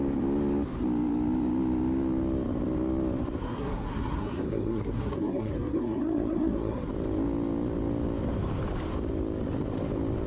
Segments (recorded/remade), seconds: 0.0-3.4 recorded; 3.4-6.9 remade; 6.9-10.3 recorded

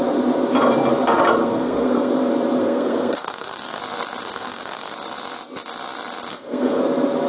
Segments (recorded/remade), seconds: 0.0-1.4 recorded; 1.4-2.1 remade; 2.1-2.6 recorded; 2.6-3.8 remade; 3.8-4.2 recorded; 4.2-4.9 remade; 4.9-6.3 recorded; 6.3-6.8 remade; 6.8-7.3 recorded

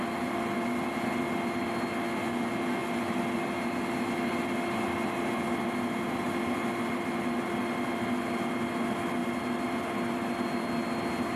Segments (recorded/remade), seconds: 0.0-11.4 recorded

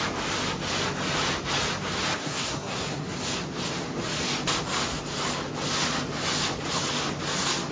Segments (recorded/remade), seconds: 0.0-2.2 recorded; 2.2-3.1 remade; 3.1-7.7 recorded

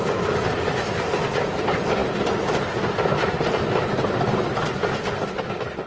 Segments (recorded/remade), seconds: 0.0-5.9 recorded

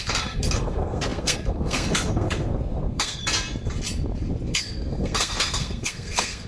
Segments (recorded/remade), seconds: 0.0-3.2 remade; 3.2-4.5 recorded; 4.5-6.5 remade